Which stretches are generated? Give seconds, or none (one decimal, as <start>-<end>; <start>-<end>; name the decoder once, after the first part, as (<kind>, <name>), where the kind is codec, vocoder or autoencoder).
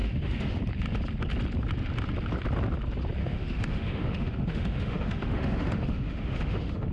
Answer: 0.0-0.6 (autoencoder, DAC-VAE); 3.2-6.9